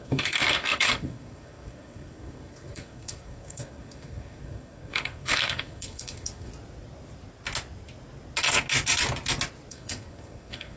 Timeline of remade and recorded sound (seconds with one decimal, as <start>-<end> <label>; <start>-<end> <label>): 0.0-6.5 remade; 6.5-9.7 recorded; 9.7-10.8 remade